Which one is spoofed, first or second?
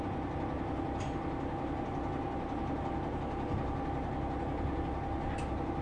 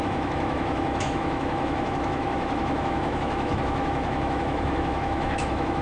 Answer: second